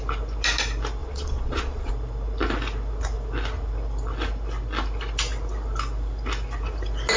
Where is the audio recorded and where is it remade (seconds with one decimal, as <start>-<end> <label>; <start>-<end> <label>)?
0.0-1.0 recorded; 1.0-1.9 remade; 1.9-7.2 recorded

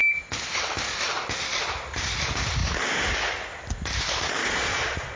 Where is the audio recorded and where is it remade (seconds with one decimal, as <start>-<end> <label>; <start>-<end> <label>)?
0.0-4.4 recorded; 4.4-5.2 remade

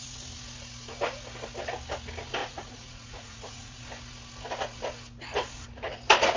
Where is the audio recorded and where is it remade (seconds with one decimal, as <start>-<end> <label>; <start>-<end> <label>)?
0.0-2.4 recorded; 2.4-3.8 remade; 3.8-6.4 recorded

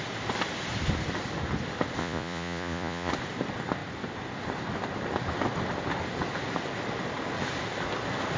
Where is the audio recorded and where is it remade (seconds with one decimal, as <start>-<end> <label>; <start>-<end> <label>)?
0.0-2.0 recorded; 2.0-3.1 remade; 3.1-8.4 recorded

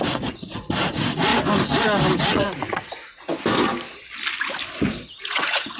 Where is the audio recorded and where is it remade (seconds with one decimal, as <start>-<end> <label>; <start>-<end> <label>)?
0.0-1.3 remade; 1.3-2.2 recorded; 2.2-3.3 remade; 3.3-5.2 recorded; 5.2-5.8 remade